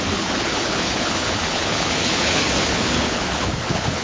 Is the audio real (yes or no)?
no